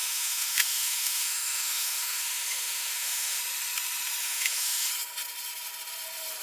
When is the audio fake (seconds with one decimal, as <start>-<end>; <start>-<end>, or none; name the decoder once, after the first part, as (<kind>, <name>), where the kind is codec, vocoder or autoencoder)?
0.0-3.4 (autoencoder, DAC-VAE); 4.2-4.9

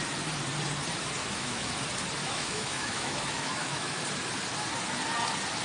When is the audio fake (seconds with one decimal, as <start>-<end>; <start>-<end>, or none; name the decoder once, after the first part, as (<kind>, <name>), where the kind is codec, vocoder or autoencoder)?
1.2-1.7 (autoencoder, DAC-VAE); 2.2-4.0